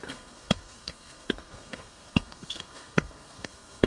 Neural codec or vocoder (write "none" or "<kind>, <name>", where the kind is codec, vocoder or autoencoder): codec, SNAC